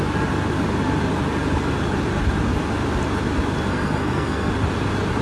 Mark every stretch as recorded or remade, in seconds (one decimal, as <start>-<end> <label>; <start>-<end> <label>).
0.0-3.7 recorded; 3.7-4.5 remade; 4.5-5.2 recorded

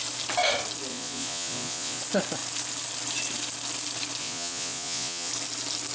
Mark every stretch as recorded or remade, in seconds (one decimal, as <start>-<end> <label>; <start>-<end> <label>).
0.0-0.9 recorded; 0.9-2.0 remade; 2.0-4.2 recorded; 4.2-5.3 remade; 5.3-5.9 recorded